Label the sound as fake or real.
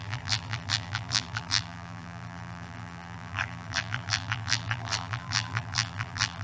fake